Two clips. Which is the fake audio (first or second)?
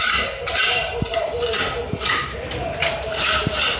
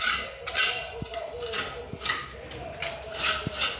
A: first